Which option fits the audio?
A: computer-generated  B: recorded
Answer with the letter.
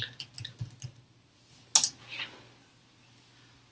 B